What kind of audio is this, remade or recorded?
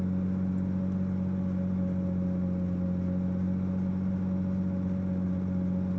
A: recorded